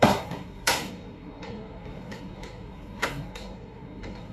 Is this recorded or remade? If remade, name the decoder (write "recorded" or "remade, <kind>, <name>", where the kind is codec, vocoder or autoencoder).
remade, codec, SNAC